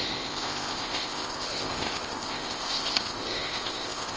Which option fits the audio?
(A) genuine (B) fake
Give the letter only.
B